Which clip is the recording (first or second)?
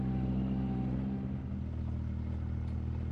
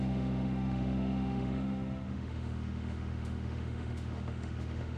first